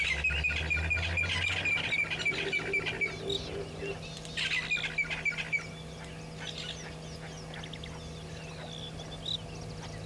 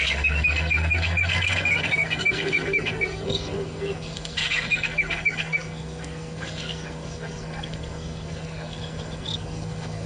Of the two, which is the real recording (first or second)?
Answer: first